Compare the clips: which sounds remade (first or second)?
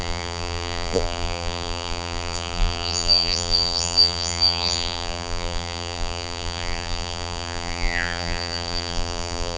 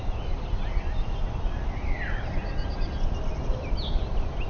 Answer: first